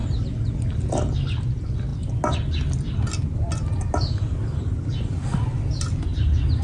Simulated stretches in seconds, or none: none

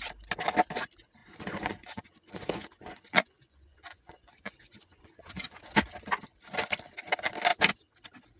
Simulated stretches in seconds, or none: 1.2-5.6 (vocoder, Vocos)

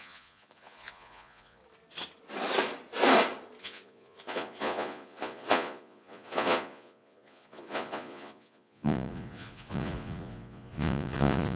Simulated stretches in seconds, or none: 0.0-1.6 (vocoder, Vocos); 3.6-11.6

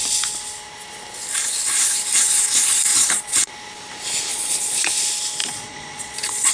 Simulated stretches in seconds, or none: 2.9-3.5 (vocoder, Vocos); 4.3-4.9; 5.4-6.5

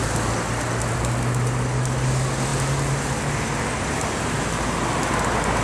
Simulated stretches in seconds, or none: none

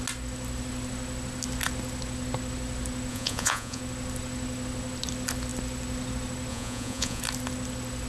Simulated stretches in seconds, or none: 3.1-3.8 (vocoder, Vocos); 6.5-7.2

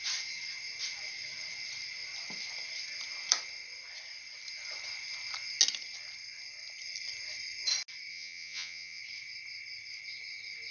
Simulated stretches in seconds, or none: 8.1-9.0 (vocoder, Vocos)

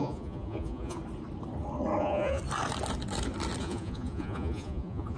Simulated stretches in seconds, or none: 0.0-1.0 (vocoder, Vocos); 2.0-2.4; 3.6-5.2